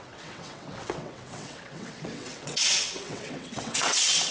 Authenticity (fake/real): fake